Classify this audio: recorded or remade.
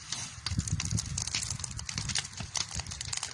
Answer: recorded